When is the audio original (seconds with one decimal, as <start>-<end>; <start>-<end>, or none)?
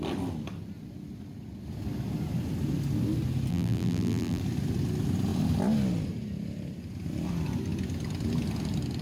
0.0-3.5; 4.4-9.0